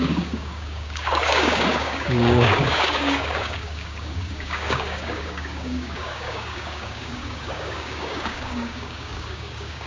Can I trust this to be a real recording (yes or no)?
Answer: no